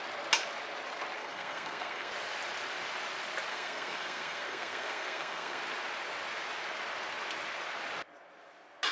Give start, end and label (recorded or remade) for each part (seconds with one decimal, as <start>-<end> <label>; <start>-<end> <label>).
0.0-1.2 recorded; 1.2-2.1 remade; 2.1-3.5 recorded; 3.5-5.6 remade; 5.6-8.9 recorded

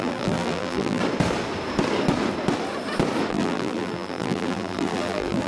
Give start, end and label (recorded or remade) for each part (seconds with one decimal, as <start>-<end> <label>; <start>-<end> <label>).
0.0-1.0 remade; 1.0-3.3 recorded; 3.3-5.5 remade

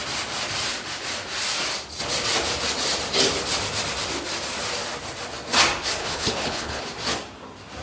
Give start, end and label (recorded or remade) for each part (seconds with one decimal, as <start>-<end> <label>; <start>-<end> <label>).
0.0-6.0 recorded; 6.0-6.8 remade; 6.8-7.8 recorded

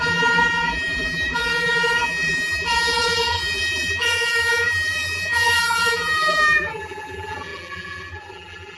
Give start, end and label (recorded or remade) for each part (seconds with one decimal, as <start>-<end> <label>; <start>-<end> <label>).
0.0-8.8 remade

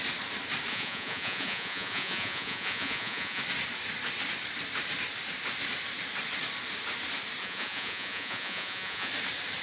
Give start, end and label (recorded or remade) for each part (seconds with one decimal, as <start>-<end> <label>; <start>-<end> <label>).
0.0-0.7 recorded; 0.7-3.4 remade; 3.4-7.4 recorded; 7.4-9.1 remade; 9.1-9.6 recorded

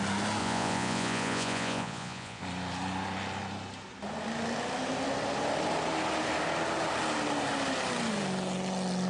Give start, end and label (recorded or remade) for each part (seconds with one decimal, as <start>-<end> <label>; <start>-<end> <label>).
0.0-0.4 recorded; 0.4-2.4 remade; 2.4-9.1 recorded

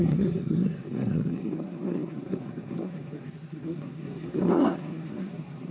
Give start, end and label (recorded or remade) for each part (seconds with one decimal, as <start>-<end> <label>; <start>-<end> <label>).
0.0-5.7 remade